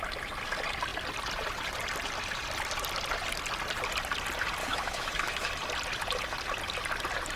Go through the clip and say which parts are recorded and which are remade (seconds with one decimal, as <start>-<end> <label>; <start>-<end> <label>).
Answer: 0.0-4.6 recorded; 4.6-5.5 remade; 5.5-7.4 recorded